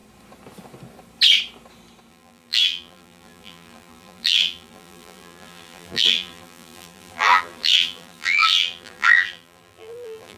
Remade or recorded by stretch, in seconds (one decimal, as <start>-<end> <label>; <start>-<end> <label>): 0.0-2.1 recorded; 2.1-10.4 remade